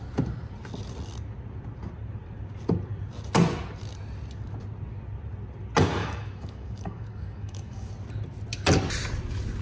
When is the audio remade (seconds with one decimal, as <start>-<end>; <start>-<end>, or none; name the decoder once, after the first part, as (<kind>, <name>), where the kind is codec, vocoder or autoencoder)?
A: 6.0-7.9 (codec, DAC)